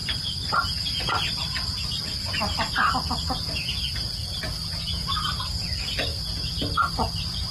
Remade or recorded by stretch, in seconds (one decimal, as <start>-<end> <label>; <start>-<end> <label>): 0.0-0.5 remade; 0.5-4.9 recorded; 4.9-5.4 remade; 5.4-6.1 recorded; 6.1-7.5 remade